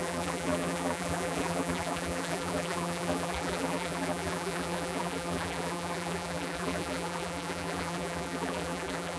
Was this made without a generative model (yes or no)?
no